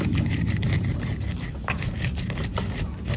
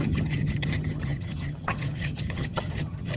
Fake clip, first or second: second